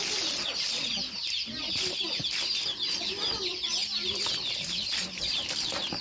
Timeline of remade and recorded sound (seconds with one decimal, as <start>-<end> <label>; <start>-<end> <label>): 0.0-5.0 recorded; 5.0-6.0 remade